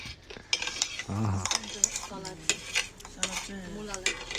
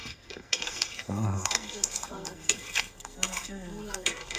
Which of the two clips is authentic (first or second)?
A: first